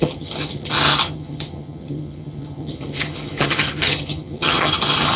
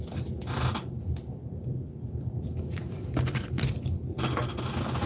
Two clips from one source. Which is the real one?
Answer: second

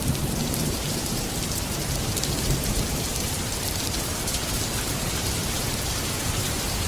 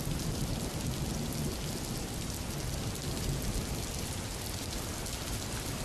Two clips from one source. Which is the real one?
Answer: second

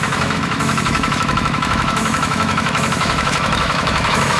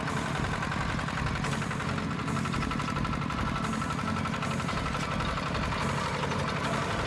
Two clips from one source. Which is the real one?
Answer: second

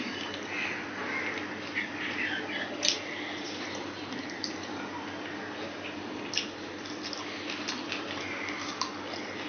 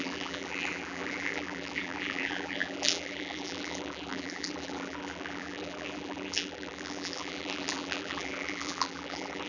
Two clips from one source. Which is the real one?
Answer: first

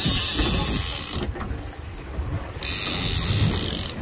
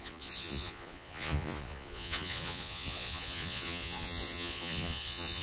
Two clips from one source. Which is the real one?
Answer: first